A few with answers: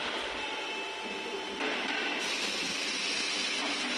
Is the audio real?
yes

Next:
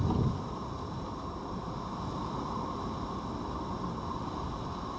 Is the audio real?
yes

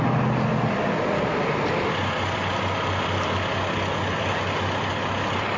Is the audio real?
yes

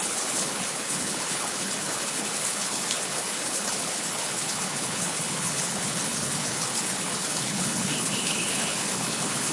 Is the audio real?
no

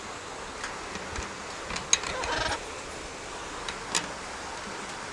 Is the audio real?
yes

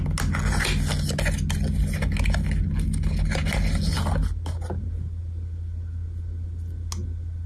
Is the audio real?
yes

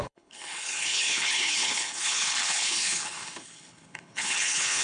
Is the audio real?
no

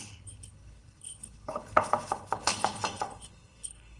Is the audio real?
no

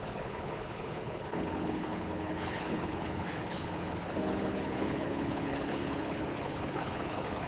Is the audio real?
no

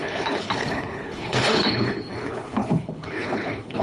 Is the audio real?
no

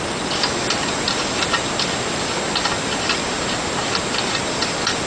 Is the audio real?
yes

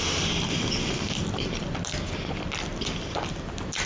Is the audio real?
yes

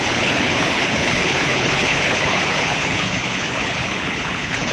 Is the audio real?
no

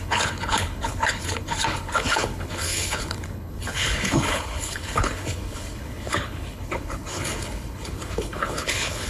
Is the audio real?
no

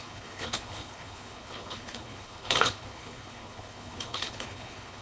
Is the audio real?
no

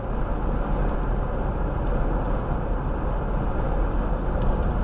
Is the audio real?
yes